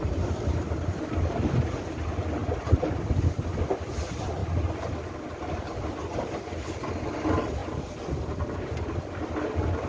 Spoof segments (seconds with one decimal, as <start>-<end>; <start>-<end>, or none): none